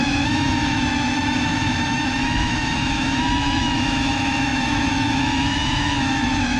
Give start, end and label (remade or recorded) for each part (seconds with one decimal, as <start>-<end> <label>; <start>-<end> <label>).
0.0-6.6 remade